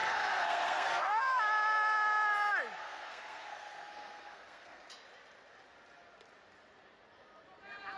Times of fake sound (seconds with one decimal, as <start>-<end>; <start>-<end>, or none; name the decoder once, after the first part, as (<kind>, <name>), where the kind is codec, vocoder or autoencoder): 0.0-1.2 (codec, SNAC); 2.8-4.9